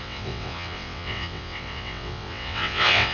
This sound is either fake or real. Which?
fake